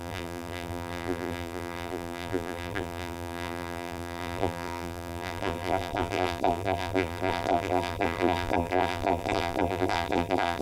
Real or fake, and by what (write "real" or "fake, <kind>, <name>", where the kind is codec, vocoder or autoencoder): fake, vocoder, BigVGAN v2